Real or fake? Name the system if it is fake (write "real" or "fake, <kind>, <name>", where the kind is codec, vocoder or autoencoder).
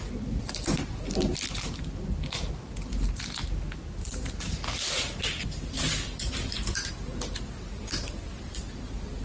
real